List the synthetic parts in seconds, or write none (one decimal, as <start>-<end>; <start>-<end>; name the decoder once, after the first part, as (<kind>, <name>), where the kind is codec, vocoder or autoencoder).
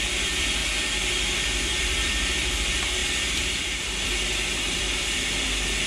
0.0-0.6 (vocoder, BigVGAN v2); 1.8-5.9